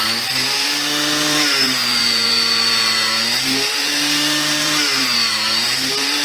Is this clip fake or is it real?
fake